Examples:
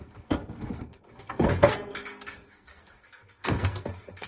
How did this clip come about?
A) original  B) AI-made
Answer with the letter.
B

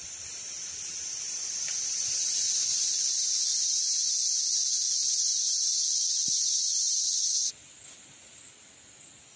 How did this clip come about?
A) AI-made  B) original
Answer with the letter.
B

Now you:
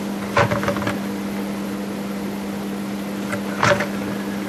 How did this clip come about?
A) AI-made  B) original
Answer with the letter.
B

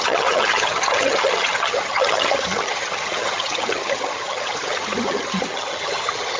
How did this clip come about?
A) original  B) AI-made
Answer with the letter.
B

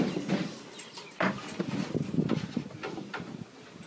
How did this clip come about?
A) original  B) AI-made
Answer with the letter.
A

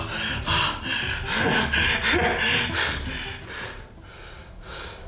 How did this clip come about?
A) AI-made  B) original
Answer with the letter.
B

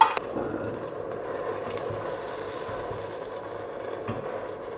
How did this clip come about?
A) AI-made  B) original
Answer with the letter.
B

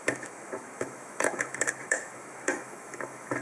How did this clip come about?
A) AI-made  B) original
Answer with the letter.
A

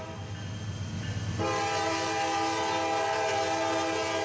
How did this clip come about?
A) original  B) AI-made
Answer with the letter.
A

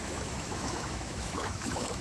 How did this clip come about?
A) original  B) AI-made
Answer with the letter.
B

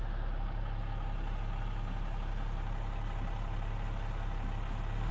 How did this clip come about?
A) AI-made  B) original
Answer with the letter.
B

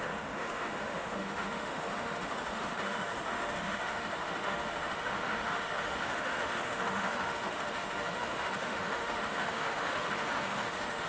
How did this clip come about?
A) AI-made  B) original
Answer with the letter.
A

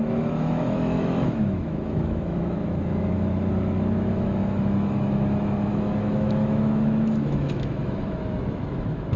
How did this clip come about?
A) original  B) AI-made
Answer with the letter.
B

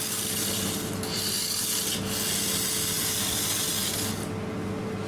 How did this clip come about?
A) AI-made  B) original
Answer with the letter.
B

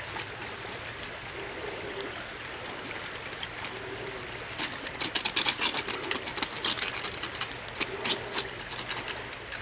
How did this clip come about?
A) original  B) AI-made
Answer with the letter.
A